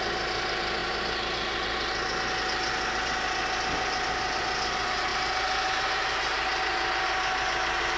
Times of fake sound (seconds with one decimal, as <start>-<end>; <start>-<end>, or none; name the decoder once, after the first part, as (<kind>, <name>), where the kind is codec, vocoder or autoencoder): none